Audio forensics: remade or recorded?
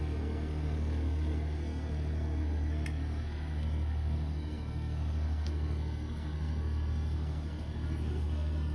remade